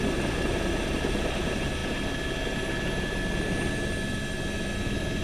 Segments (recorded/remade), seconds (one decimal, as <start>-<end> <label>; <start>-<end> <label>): 0.0-5.2 recorded